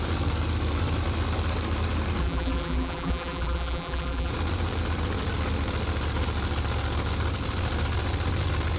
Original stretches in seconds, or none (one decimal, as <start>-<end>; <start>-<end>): 0.0-2.2; 4.3-8.8